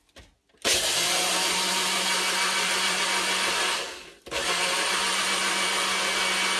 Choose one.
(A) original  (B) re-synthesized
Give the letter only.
A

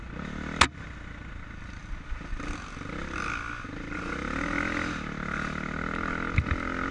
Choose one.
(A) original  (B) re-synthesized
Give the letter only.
A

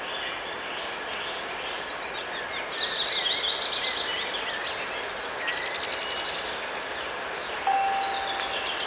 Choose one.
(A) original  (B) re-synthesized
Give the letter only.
A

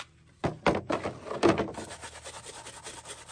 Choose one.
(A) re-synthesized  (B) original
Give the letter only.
B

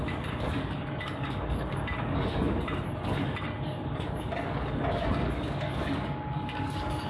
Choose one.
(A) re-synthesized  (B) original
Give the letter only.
A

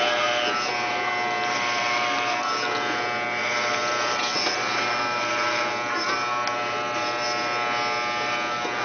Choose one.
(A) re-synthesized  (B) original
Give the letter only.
B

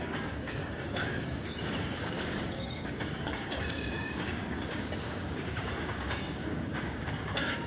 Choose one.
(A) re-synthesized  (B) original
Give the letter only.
A